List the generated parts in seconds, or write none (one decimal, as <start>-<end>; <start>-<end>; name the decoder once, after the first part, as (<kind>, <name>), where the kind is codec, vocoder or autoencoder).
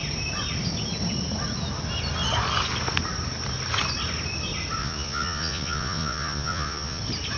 4.8-7.0 (vocoder, Vocos)